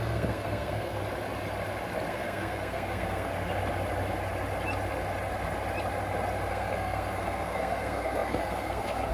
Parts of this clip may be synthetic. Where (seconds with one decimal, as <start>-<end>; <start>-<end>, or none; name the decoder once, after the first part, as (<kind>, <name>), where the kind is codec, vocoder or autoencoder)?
0.0-1.0 (codec, SNAC); 2.1-3.3; 6.5-9.1